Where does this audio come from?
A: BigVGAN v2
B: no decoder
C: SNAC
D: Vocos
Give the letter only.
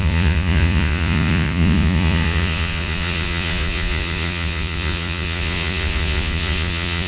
D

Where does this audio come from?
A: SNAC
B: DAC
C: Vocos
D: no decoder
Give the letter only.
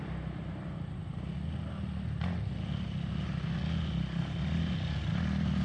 D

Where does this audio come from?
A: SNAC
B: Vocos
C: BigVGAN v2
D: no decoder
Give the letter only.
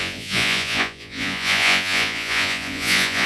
B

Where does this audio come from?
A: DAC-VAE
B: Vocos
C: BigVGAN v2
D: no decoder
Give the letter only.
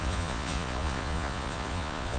B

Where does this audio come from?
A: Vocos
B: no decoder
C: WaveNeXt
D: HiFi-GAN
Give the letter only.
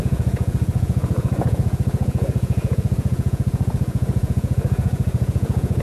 A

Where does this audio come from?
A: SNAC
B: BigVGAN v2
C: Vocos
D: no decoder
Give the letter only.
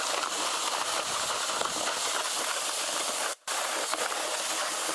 D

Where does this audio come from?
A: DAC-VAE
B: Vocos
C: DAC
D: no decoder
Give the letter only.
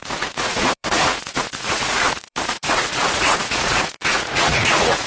B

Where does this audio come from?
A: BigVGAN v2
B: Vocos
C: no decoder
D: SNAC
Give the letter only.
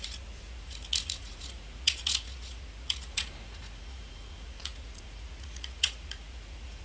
B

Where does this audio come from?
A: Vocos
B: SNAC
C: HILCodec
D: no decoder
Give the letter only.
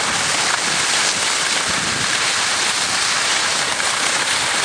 D